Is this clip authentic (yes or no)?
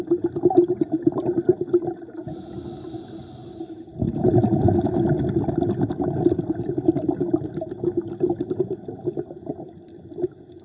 yes